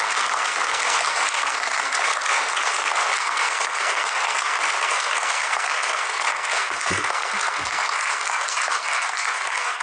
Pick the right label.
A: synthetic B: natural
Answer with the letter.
A